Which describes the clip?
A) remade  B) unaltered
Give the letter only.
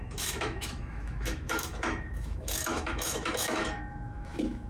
A